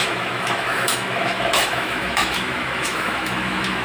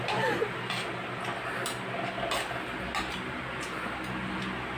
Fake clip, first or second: first